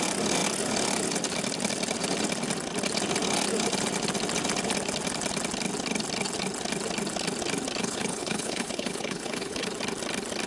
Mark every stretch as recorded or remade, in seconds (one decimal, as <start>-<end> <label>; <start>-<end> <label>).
0.0-7.8 recorded; 7.8-9.7 remade; 9.7-10.5 recorded